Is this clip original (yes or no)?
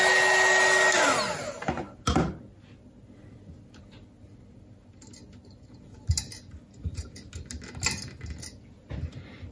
yes